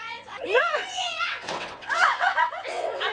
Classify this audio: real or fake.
fake